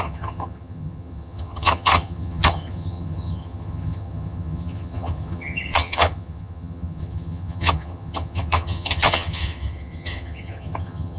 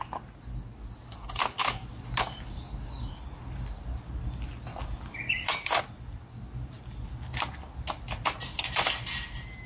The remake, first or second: first